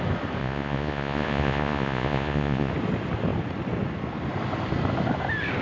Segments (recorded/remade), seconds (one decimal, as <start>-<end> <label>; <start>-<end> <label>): 0.0-0.4 recorded; 0.4-2.7 remade; 2.7-5.6 recorded